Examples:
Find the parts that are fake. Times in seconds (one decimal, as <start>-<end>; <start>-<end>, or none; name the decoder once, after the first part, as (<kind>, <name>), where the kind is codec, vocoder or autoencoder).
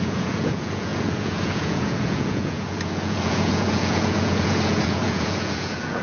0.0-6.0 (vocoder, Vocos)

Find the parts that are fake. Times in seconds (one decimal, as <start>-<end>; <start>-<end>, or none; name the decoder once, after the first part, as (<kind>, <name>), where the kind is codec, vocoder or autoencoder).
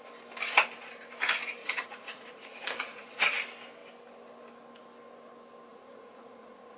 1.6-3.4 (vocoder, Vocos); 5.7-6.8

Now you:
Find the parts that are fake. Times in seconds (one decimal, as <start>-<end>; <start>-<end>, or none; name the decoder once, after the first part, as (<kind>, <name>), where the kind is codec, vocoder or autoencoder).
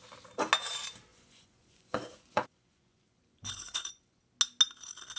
1.1-4.2 (vocoder, Vocos)